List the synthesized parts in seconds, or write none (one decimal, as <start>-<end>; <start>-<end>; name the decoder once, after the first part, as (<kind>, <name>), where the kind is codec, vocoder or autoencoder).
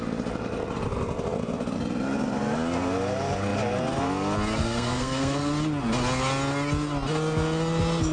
4.6-5.5 (codec, SNAC)